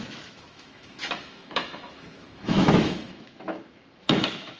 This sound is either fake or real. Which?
fake